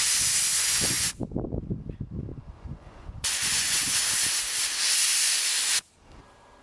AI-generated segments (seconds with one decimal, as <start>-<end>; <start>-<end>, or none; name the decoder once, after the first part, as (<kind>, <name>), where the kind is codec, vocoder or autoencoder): 0.5-1.2 (vocoder, Vocos); 2.3-4.0